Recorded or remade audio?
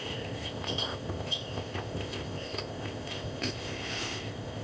remade